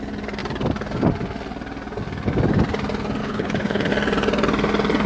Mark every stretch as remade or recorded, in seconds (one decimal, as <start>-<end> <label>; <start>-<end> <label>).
0.0-3.2 recorded; 3.2-3.9 remade; 3.9-5.1 recorded